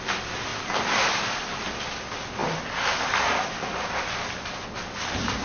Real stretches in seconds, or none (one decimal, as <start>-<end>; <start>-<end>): 0.0-0.5; 1.8-2.4; 4.0-5.4